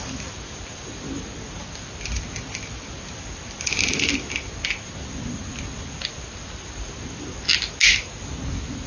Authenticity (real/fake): real